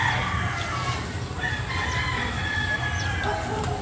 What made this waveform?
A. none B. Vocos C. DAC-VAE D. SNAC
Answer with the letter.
A